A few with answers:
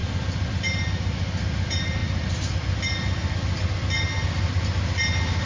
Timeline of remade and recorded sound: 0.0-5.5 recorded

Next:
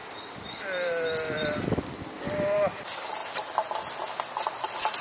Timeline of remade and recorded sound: 0.0-0.6 recorded; 0.6-3.2 remade; 3.2-4.2 recorded; 4.2-5.0 remade

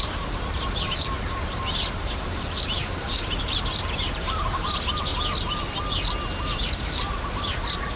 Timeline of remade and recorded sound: 0.0-5.1 remade; 5.1-6.4 recorded; 6.4-8.0 remade

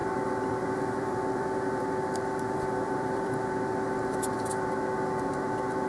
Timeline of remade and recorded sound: 0.0-3.5 remade; 3.5-5.9 recorded